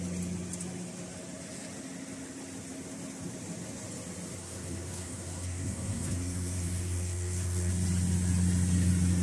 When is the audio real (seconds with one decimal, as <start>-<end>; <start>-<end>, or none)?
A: 0.0-4.4; 7.7-9.2

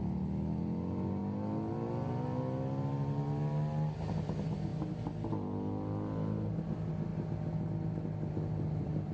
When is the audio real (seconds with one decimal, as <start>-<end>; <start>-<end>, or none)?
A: 0.0-9.1

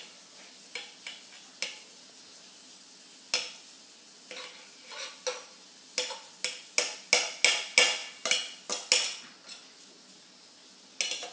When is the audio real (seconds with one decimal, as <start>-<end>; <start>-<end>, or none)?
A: 0.0-11.3

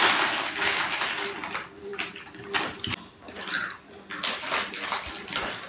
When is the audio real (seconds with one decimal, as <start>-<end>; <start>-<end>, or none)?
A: 0.0-5.7